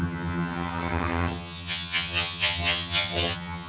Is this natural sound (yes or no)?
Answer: no